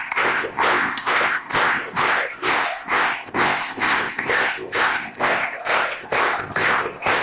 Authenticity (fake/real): fake